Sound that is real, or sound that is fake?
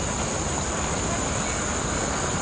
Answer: real